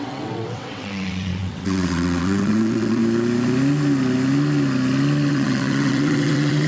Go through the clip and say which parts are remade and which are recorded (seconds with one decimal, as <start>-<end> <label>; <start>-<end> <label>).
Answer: 0.0-3.0 remade; 3.0-5.3 recorded; 5.3-6.7 remade